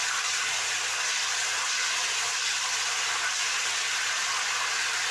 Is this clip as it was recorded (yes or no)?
yes